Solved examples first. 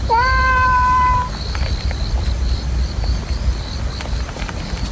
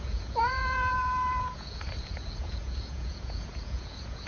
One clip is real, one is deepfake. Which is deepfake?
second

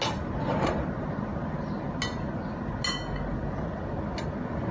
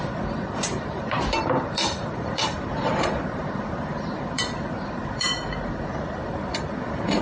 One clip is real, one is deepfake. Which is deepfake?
second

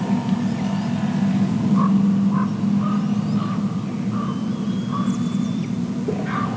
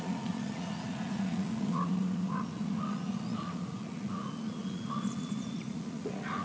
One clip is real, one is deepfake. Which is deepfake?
second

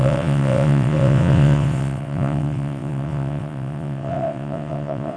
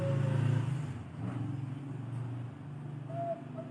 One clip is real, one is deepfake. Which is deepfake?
first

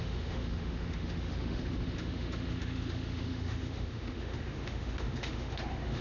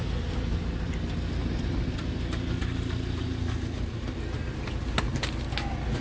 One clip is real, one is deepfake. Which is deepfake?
first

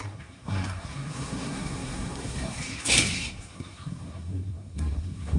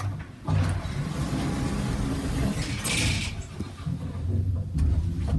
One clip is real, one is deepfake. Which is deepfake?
first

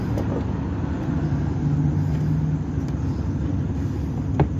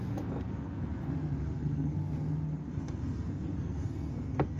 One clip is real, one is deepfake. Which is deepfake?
second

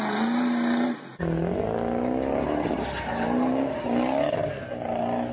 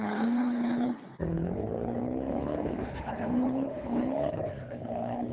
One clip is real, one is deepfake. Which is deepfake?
second